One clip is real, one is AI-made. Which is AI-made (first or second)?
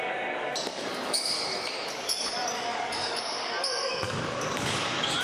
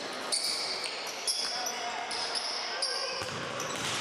first